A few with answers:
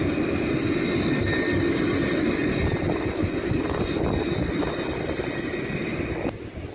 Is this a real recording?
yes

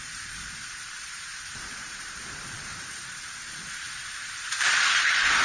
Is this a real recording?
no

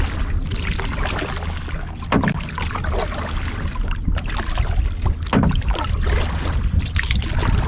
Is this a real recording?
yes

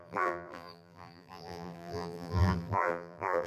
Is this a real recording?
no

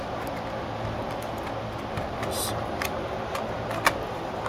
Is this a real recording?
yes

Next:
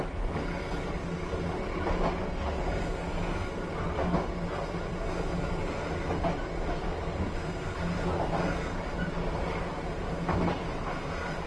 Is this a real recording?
yes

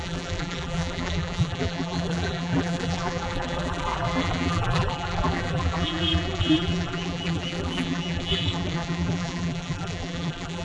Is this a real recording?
no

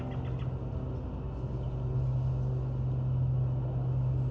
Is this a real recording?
yes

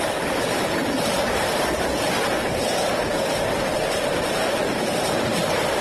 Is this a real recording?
no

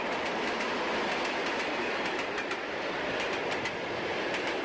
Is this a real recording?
yes